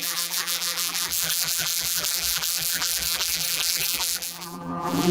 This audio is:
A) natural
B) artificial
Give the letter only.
B